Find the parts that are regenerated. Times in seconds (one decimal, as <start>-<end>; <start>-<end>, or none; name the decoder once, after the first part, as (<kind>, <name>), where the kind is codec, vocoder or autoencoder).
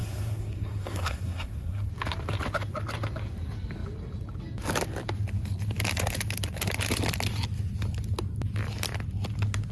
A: 0.0-1.9 (codec, SNAC)